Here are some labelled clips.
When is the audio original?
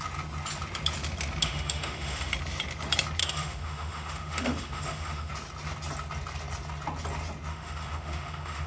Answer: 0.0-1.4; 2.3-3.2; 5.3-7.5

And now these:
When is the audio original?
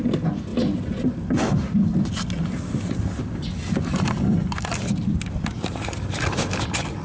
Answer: 0.0-7.0